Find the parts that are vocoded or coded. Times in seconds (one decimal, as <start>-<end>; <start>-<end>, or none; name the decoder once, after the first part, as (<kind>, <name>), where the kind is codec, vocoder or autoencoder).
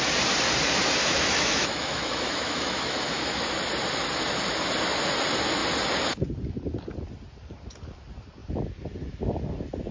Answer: 1.0-3.4 (autoencoder, DAC-VAE)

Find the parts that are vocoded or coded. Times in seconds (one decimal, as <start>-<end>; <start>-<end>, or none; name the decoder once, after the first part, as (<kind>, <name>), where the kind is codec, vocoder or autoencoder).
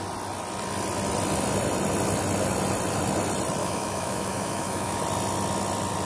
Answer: 3.6-5.0 (autoencoder, DAC-VAE)